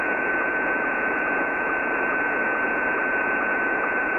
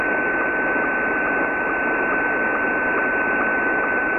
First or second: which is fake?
first